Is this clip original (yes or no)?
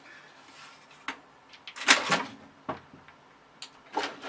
yes